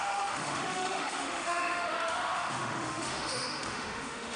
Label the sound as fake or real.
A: fake